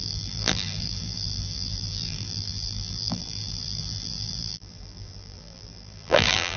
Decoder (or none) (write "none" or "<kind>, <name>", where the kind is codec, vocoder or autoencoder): vocoder, BigVGAN v2